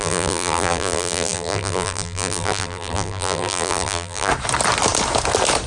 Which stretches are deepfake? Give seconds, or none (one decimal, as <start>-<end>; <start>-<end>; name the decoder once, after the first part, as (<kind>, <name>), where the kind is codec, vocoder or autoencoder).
0.0-4.3 (vocoder, BigVGAN v2)